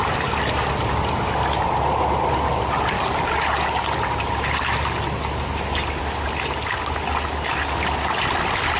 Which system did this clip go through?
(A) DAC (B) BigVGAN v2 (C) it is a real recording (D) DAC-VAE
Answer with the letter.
C